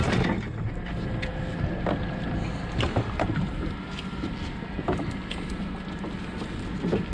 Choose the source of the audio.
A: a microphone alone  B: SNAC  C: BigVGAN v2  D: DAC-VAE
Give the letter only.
A